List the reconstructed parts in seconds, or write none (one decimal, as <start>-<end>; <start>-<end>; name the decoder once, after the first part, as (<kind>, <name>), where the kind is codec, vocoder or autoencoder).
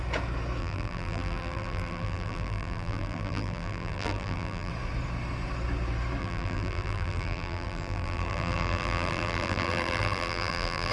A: 0.6-4.7 (vocoder, BigVGAN v2); 6.2-10.9